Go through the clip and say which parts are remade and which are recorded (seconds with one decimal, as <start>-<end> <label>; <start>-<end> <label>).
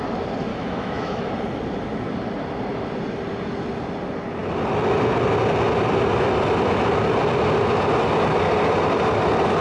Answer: 0.0-0.5 recorded; 0.5-1.3 remade; 1.3-9.6 recorded